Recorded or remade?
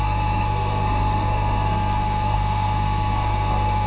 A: remade